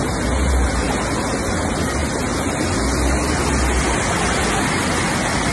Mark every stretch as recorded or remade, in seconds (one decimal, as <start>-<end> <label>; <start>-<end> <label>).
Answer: 0.0-5.5 recorded